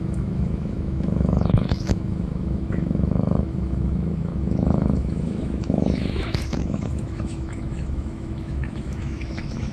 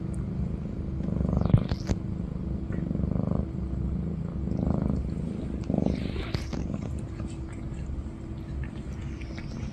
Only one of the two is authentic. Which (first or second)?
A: second